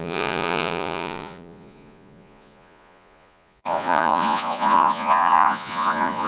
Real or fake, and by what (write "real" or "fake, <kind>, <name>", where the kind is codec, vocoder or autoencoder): fake, vocoder, Vocos